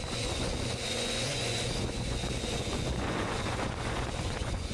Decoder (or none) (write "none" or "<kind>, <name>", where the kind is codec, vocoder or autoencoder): vocoder, Vocos